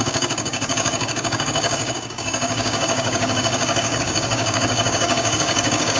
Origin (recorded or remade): remade